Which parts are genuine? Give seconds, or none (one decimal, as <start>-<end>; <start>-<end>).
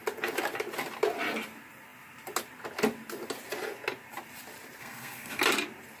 0.0-4.8; 5.4-6.0